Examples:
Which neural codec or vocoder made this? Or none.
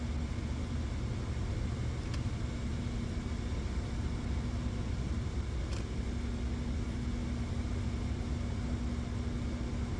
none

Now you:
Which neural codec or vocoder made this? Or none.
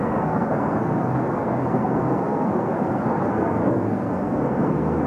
codec, SNAC